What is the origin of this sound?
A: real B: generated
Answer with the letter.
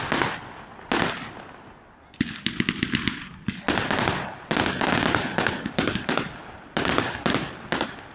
A